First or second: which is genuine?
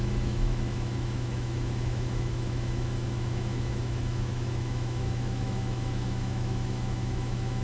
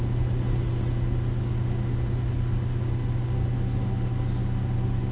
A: second